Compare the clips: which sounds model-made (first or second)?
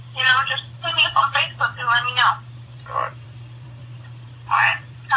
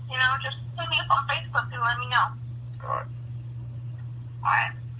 first